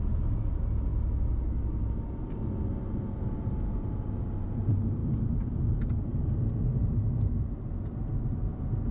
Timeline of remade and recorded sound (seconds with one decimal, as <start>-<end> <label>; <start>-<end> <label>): 0.0-8.9 recorded